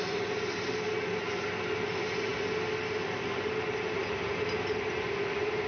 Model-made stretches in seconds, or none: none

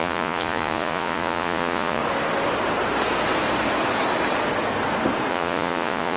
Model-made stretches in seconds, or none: 0.0-2.0 (vocoder, Vocos); 5.3-6.2

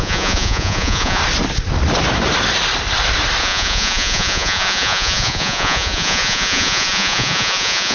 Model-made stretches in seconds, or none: 0.0-1.2 (vocoder, Vocos); 3.4-7.9